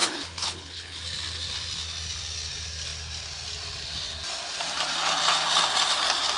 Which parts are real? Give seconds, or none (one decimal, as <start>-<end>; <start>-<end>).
1.0-6.4